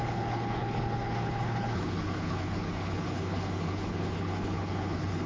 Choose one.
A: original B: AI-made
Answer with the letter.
B